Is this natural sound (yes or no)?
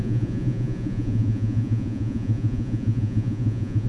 no